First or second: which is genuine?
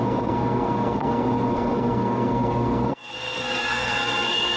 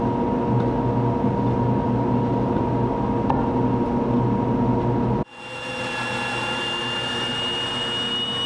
second